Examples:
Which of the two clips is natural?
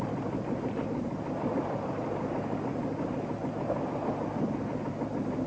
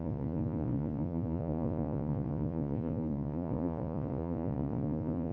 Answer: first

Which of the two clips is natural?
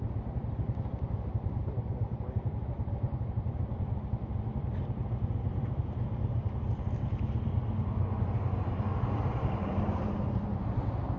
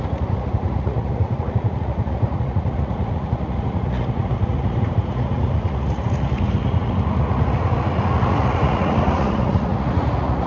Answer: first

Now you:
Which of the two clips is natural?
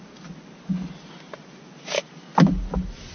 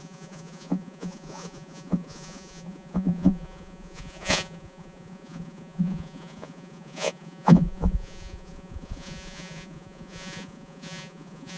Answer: first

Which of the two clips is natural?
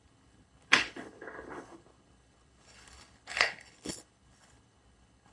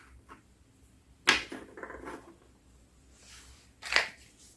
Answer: second